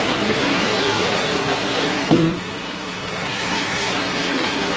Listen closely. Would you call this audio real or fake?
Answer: fake